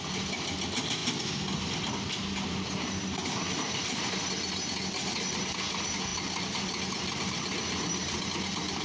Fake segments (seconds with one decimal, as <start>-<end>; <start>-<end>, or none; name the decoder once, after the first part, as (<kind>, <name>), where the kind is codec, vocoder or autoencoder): none